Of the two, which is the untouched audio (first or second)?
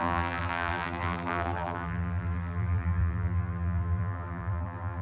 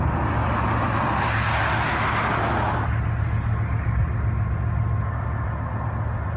second